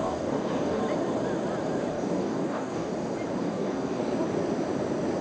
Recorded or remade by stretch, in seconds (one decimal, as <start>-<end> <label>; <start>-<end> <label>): 0.0-0.8 remade; 0.8-1.9 recorded; 1.9-2.9 remade; 2.9-3.4 recorded; 3.4-4.0 remade; 4.0-5.2 recorded